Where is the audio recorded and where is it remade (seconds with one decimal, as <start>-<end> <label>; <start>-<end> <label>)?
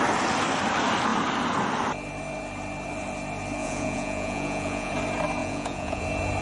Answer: 0.0-3.6 recorded; 3.6-4.9 remade; 4.9-5.4 recorded; 5.4-6.0 remade; 6.0-6.4 recorded